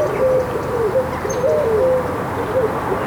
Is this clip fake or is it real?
real